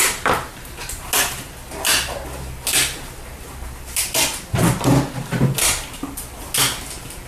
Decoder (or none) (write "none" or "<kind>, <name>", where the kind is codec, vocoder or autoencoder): none